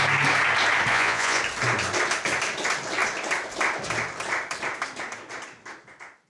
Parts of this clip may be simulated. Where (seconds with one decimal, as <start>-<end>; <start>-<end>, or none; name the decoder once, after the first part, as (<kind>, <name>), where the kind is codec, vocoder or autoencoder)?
0.9-1.4 (vocoder, Vocos)